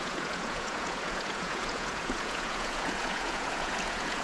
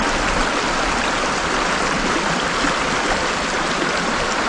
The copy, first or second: first